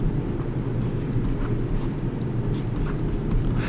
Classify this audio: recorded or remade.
recorded